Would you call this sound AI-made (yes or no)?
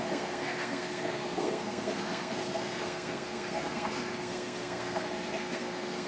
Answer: yes